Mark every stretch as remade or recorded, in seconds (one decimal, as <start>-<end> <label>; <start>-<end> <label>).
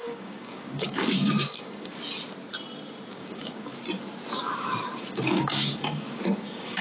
0.0-2.0 remade; 2.0-3.1 recorded; 3.1-3.7 remade; 3.7-5.0 recorded; 5.0-6.8 remade